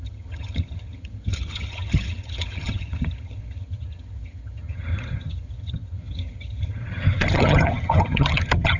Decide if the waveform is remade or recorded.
remade